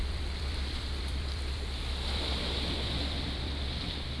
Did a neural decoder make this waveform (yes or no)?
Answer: yes